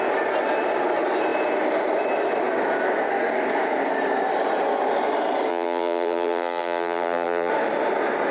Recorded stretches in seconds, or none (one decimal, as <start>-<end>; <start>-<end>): 0.0-5.5; 7.5-8.3